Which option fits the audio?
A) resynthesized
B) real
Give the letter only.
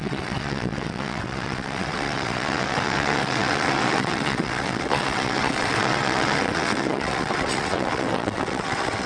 A